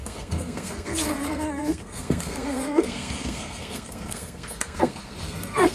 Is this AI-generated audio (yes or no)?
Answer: yes